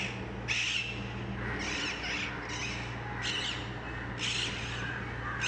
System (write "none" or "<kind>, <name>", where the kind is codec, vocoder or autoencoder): none